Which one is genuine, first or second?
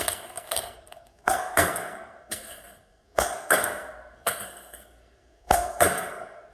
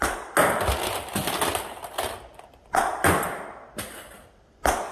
second